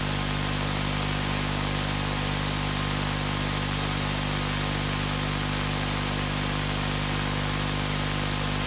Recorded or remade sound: recorded